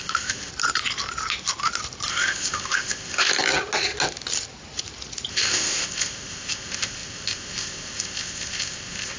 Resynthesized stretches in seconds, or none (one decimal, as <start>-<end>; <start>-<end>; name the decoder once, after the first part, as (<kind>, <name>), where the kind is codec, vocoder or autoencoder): 0.0-0.5 (codec, ZipCodec); 2.1-3.3; 5.3-9.2